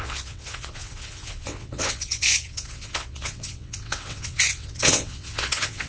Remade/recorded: remade